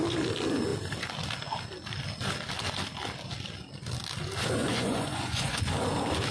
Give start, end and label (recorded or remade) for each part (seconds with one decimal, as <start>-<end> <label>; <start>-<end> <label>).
0.0-4.6 recorded; 4.6-5.6 remade; 5.6-6.3 recorded